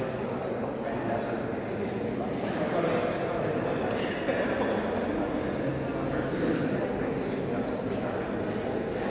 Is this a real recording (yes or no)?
yes